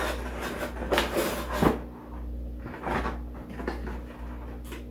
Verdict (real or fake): real